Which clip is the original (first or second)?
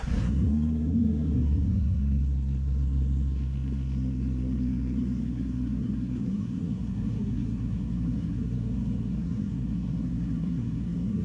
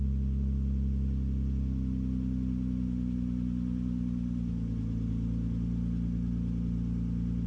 second